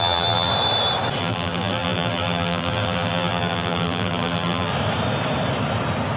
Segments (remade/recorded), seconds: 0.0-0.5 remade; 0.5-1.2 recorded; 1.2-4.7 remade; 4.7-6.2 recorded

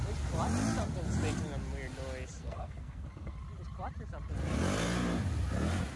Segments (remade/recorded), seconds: 0.0-2.4 recorded; 2.4-3.4 remade; 3.4-6.0 recorded

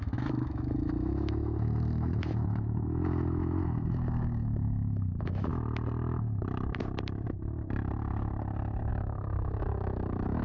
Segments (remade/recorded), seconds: 0.0-5.5 remade; 5.5-8.9 recorded; 8.9-10.4 remade

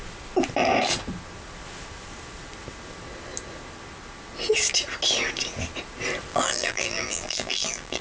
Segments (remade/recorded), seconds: 0.0-6.3 recorded; 6.3-8.0 remade